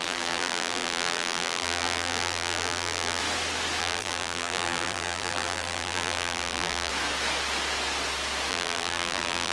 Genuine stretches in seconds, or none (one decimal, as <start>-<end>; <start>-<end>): 3.2-3.8; 6.9-8.5